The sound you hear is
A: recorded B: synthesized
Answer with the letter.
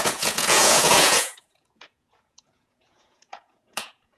B